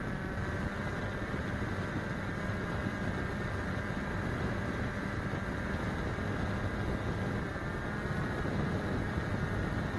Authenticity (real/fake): real